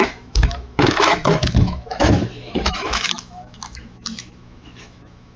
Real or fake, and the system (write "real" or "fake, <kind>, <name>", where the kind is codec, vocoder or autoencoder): fake, autoencoder, DAC-VAE